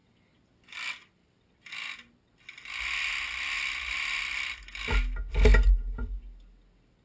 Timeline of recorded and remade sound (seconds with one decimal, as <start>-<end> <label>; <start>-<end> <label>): 0.0-7.0 recorded